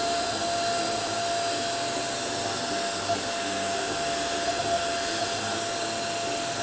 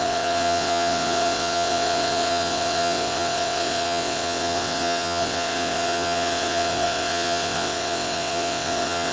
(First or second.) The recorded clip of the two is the first